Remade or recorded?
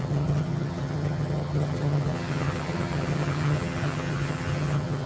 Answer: remade